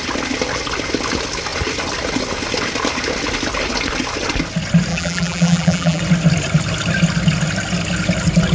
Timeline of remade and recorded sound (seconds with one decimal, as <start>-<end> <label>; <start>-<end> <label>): 0.0-4.9 recorded; 4.9-6.0 remade; 6.0-8.5 recorded